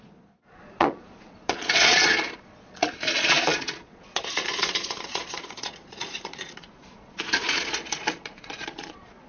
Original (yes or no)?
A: no